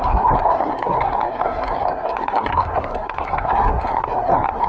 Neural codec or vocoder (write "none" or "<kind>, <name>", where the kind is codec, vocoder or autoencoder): codec, SNAC